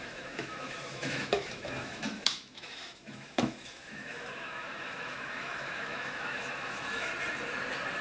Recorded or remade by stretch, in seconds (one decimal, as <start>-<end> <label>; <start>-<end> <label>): 0.0-7.1 remade; 7.1-8.0 recorded

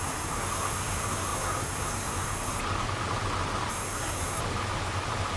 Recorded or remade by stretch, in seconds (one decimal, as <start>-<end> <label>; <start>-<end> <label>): 0.0-2.6 remade; 2.6-3.7 recorded; 3.7-4.4 remade; 4.4-5.4 recorded

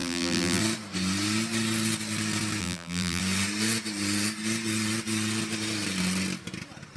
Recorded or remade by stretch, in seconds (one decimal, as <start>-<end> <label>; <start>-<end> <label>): 0.0-0.6 remade; 0.6-2.6 recorded; 2.6-3.2 remade; 3.2-7.0 recorded

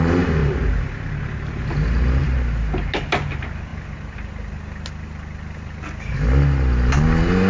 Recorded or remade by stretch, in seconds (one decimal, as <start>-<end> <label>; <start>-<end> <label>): 0.0-7.5 recorded

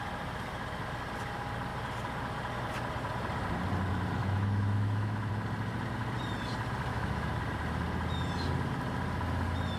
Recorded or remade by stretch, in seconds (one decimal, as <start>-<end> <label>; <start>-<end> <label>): 0.0-4.2 recorded; 4.2-5.3 remade; 5.3-6.9 recorded; 6.9-7.4 remade; 7.4-9.8 recorded

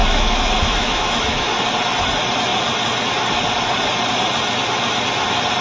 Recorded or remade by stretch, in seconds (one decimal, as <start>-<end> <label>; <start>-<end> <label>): 0.0-1.5 remade; 1.5-5.6 recorded

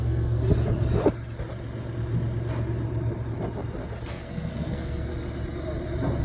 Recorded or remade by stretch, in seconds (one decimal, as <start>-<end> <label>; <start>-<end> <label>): 0.0-0.4 remade; 0.4-4.1 recorded; 4.1-5.1 remade; 5.1-6.2 recorded